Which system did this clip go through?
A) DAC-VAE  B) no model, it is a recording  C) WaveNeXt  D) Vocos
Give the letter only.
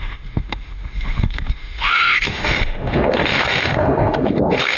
A